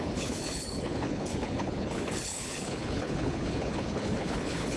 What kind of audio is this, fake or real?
fake